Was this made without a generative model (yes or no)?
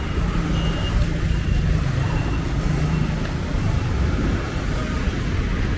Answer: yes